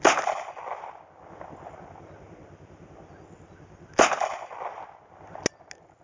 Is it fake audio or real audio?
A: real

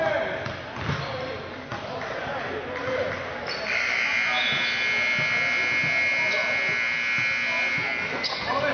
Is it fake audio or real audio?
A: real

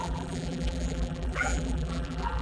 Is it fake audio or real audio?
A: fake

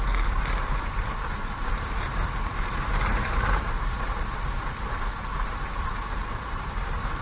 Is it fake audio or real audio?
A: fake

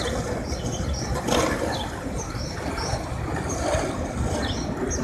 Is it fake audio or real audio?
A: fake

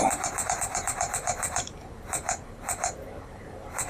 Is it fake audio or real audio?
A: fake